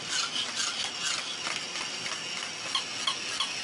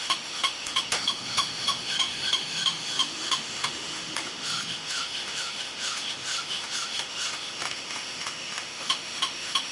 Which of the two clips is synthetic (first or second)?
second